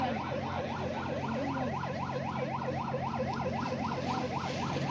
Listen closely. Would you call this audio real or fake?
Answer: real